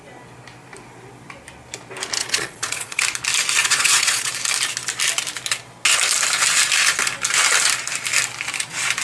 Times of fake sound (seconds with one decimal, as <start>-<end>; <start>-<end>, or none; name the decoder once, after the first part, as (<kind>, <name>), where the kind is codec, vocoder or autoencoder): 2.2-3.0 (vocoder, Vocos); 3.6-4.3